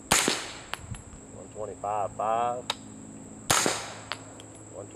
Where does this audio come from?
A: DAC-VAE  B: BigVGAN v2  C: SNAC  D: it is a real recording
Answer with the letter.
D